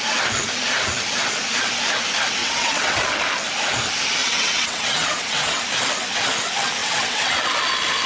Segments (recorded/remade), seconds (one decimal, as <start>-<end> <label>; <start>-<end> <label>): 0.0-2.4 recorded; 2.4-3.0 remade; 3.0-4.2 recorded; 4.2-5.6 remade; 5.6-6.8 recorded; 6.8-7.3 remade; 7.3-8.1 recorded